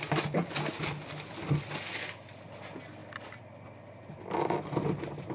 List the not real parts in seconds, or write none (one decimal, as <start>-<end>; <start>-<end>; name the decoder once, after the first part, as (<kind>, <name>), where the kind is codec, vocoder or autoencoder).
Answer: none